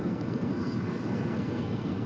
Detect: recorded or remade remade